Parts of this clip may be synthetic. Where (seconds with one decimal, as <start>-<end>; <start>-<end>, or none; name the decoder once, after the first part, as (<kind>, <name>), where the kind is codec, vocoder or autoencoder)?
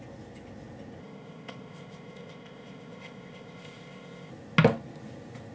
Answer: 1.0-4.3 (codec, ZipCodec)